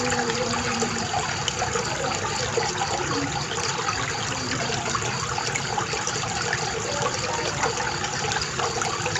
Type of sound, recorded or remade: recorded